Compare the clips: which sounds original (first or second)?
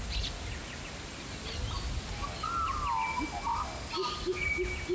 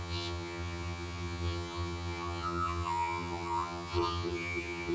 first